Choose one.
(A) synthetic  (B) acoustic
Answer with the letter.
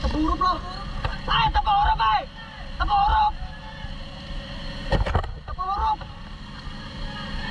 B